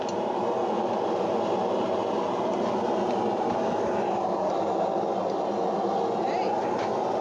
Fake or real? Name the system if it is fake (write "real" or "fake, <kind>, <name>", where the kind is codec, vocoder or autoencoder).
real